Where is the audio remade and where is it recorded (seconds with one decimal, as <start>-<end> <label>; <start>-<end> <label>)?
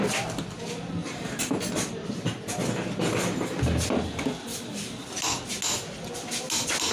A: 0.0-1.0 recorded; 1.0-2.4 remade; 2.4-6.9 recorded